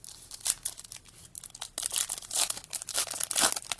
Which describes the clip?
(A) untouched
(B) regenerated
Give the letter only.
A